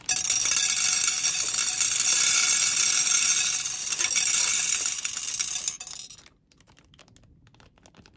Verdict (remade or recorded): recorded